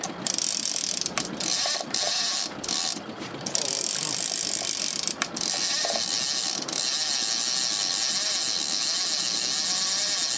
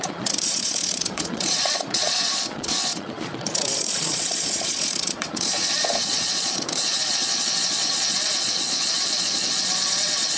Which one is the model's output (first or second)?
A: second